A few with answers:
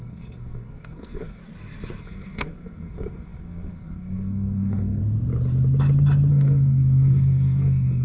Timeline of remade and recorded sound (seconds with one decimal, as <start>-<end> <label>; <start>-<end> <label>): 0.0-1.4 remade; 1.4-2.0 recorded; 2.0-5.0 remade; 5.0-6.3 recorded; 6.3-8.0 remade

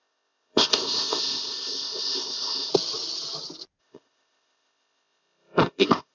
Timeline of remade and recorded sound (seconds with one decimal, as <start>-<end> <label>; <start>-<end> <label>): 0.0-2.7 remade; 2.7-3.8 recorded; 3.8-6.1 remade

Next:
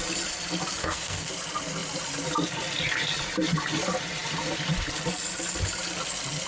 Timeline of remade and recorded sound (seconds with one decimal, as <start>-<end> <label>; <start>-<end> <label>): 0.0-0.8 recorded; 0.8-1.3 remade; 1.3-6.5 recorded

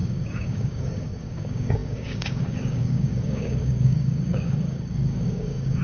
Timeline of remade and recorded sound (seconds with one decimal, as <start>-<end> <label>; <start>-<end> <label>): 0.0-5.8 remade

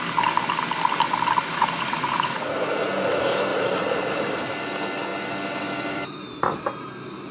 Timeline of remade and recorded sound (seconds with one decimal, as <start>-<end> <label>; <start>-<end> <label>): 0.0-1.4 recorded; 1.4-2.7 remade; 2.7-3.5 recorded; 3.5-4.5 remade; 4.5-7.3 recorded

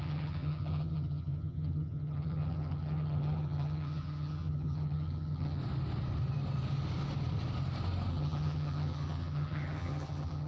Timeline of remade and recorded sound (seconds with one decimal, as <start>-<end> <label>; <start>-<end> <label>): 0.0-5.6 remade; 5.6-8.1 recorded; 8.1-10.5 remade

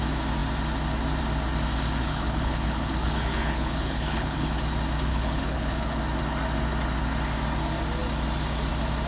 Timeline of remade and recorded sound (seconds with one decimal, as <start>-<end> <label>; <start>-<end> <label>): 0.0-2.0 recorded; 2.0-4.5 remade; 4.5-5.1 recorded; 5.1-6.0 remade; 6.0-9.1 recorded

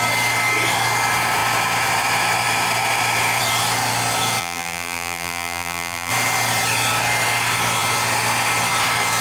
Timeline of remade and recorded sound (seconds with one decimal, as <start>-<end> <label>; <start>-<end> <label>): 0.0-4.4 recorded; 4.4-6.1 remade; 6.1-9.2 recorded